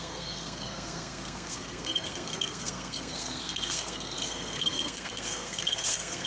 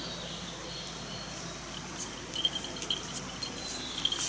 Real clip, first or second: second